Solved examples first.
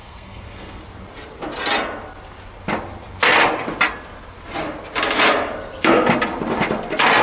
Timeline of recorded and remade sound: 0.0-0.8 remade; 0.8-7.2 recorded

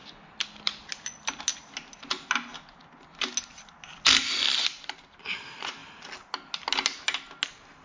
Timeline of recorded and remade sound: 0.0-7.8 recorded

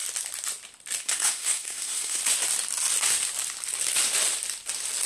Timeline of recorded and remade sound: 0.0-1.0 recorded; 1.0-2.2 remade; 2.2-5.1 recorded

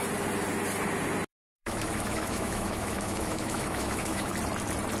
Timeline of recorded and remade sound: 0.0-1.3 recorded; 1.3-4.3 remade; 4.3-5.0 recorded

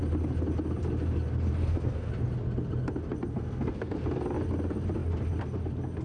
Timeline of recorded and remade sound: 0.0-1.6 recorded; 1.6-2.1 remade; 2.1-3.3 recorded; 3.3-3.9 remade; 3.9-6.0 recorded

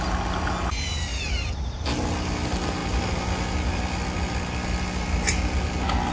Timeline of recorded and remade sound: 0.0-6.1 recorded

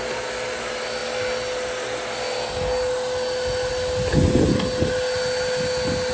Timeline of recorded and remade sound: 0.0-6.1 recorded

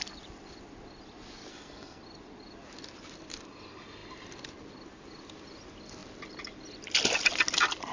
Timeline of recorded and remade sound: 0.0-1.5 recorded; 1.5-2.0 remade; 2.0-7.9 recorded